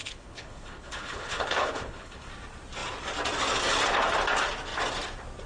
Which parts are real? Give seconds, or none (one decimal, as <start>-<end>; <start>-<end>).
2.3-5.5

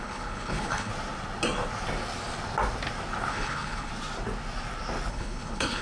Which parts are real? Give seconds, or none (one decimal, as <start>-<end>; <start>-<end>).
0.9-3.3; 3.9-5.1

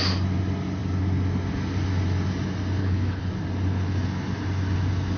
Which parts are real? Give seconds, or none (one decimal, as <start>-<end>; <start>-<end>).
0.0-2.8; 3.3-5.2

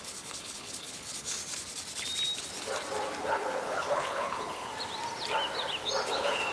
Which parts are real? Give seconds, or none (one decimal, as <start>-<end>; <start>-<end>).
1.4-3.2; 4.7-6.1